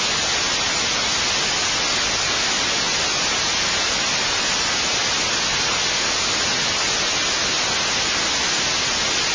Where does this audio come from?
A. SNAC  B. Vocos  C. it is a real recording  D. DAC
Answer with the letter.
C